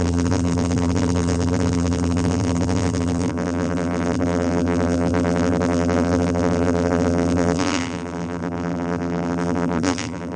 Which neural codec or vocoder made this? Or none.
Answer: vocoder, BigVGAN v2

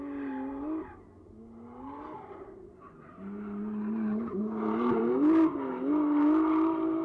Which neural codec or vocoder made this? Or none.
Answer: none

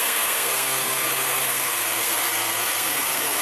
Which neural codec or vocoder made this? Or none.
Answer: codec, SNAC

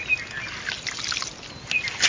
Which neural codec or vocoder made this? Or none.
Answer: none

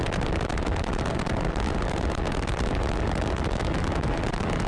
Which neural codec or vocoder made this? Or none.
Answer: none